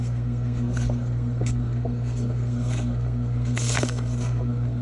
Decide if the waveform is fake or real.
fake